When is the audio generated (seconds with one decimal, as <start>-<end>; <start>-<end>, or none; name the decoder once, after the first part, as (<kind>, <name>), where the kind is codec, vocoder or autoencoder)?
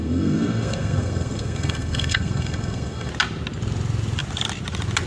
0.0-3.1 (codec, SNAC)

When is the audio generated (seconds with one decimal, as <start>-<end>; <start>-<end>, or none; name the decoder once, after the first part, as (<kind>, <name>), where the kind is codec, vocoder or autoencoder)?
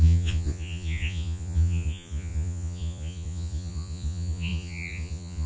0.0-5.5 (vocoder, Vocos)